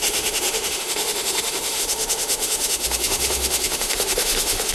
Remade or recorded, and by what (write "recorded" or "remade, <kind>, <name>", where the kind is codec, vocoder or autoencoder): remade, autoencoder, DAC-VAE